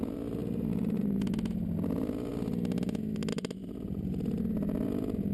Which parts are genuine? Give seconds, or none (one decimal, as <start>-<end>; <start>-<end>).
2.3-3.3